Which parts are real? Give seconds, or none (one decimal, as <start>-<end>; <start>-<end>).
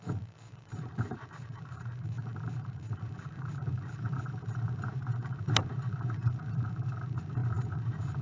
none